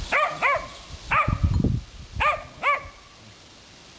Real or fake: real